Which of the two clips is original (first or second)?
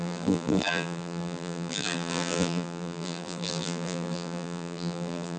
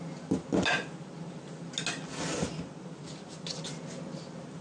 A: second